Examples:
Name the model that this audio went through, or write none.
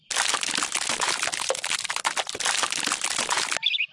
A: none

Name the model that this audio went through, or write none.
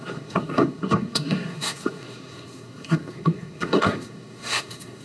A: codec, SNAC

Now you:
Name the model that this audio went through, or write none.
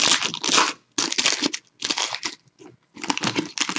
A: none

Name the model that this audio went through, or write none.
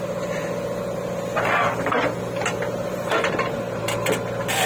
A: none